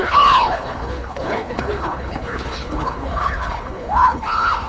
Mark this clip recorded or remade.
remade